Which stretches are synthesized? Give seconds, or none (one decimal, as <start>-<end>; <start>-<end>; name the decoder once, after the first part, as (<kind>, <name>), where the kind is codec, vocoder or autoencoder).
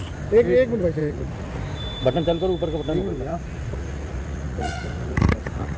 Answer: 1.0-1.6 (vocoder, Vocos); 3.3-5.8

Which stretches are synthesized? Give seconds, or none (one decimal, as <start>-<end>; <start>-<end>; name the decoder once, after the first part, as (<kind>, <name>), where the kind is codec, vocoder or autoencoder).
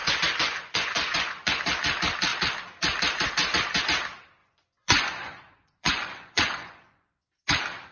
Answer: 0.0-1.6 (vocoder, Vocos); 4.4-7.2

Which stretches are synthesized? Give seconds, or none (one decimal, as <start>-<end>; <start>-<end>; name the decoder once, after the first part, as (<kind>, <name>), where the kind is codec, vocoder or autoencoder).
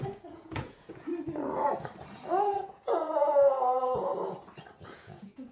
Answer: 0.0-1.1 (vocoder, Vocos); 2.3-4.1; 4.9-5.5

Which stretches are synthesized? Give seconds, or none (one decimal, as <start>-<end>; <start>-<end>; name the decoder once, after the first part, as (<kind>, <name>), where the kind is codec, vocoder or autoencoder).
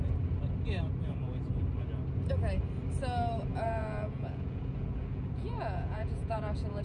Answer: 3.5-6.8 (vocoder, Vocos)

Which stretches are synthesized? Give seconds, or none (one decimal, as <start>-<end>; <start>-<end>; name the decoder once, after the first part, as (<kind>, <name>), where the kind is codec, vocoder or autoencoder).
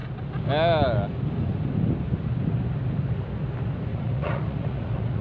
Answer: 3.9-5.2 (vocoder, Vocos)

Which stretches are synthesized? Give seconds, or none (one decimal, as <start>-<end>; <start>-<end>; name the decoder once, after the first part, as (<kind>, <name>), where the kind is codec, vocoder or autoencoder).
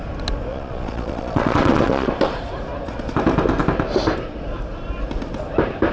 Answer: 0.5-2.1 (vocoder, Vocos)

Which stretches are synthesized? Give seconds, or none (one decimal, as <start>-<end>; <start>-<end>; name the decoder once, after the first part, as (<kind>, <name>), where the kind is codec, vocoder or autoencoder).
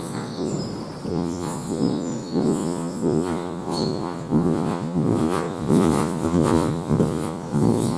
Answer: 0.0-0.5 (vocoder, Vocos); 1.1-8.0